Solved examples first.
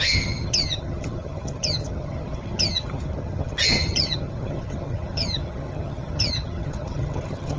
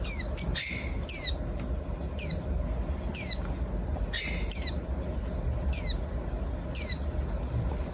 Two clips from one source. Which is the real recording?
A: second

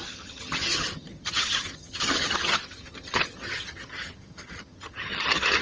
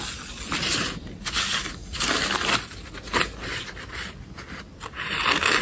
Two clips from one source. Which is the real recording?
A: second